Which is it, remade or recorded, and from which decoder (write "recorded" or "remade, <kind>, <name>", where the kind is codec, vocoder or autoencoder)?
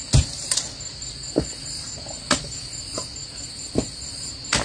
recorded